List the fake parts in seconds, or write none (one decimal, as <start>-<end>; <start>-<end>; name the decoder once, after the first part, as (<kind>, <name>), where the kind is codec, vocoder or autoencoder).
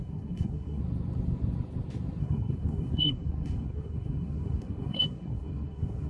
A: 0.0-0.8 (codec, SNAC); 2.2-6.1